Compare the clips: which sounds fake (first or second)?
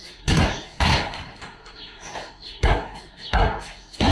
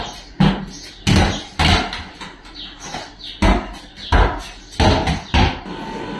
first